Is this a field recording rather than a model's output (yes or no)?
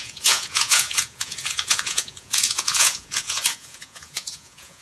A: no